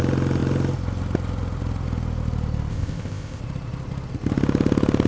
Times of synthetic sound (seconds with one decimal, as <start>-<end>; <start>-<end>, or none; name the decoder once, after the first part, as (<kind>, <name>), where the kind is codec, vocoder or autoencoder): 2.7-3.4 (codec, ZipCodec)